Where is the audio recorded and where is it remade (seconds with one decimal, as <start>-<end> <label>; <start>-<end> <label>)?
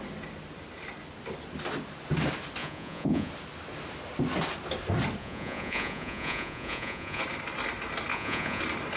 0.0-2.6 recorded; 2.6-3.3 remade; 3.3-5.2 recorded; 5.2-7.2 remade; 7.2-8.1 recorded; 8.1-8.6 remade; 8.6-9.0 recorded